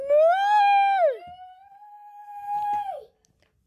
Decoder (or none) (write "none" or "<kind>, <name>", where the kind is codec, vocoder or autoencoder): none